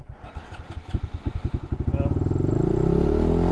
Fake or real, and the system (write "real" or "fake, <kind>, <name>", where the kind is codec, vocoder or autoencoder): real